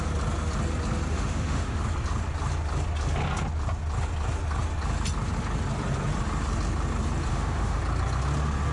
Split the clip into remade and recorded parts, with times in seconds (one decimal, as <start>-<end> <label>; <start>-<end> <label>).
0.0-1.1 recorded; 1.1-1.8 remade; 1.8-7.3 recorded; 7.3-7.8 remade; 7.8-8.7 recorded